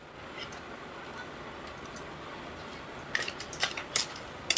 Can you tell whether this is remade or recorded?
recorded